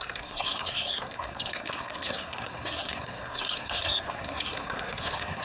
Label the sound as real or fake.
fake